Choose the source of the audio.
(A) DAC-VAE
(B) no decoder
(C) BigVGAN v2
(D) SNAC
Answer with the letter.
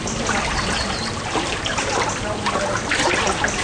B